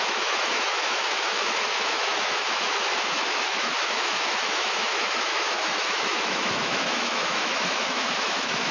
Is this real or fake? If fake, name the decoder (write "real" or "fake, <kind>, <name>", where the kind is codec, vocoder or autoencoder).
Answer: fake, autoencoder, DAC-VAE